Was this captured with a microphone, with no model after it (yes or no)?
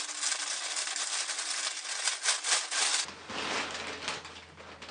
yes